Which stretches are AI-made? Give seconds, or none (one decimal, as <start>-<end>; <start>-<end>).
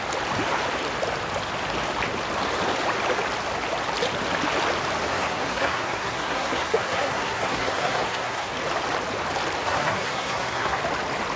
5.1-8.5; 9.6-10.8